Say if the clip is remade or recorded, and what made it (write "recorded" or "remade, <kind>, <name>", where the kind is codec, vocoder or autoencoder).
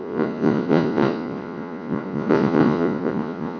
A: remade, vocoder, Vocos